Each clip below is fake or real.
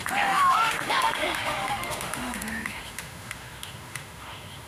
fake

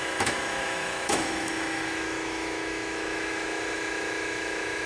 fake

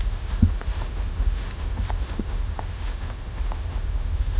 fake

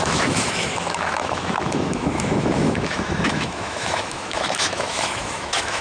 fake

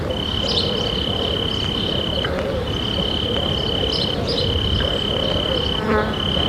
real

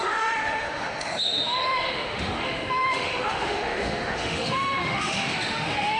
fake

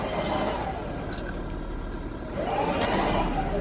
real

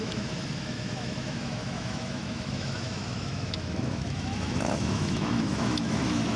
fake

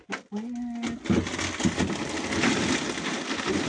real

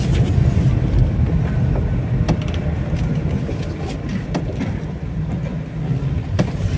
real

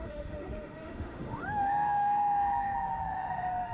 fake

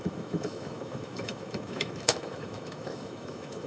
fake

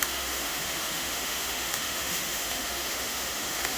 fake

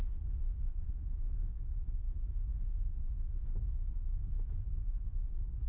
fake